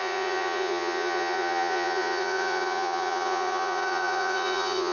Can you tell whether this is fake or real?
fake